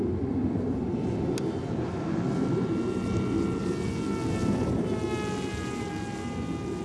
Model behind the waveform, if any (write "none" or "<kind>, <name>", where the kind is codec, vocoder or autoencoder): none